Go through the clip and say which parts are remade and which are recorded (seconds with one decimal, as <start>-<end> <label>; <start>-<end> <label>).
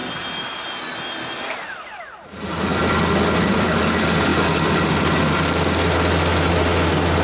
0.0-7.2 recorded